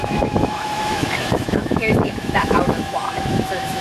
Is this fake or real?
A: fake